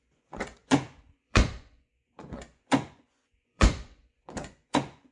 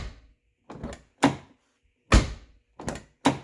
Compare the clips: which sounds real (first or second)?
second